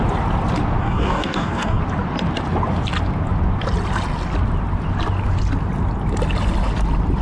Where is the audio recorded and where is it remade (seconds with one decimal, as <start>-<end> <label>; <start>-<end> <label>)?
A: 0.0-0.8 recorded; 0.8-1.8 remade; 1.8-7.2 recorded